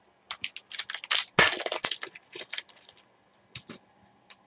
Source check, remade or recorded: recorded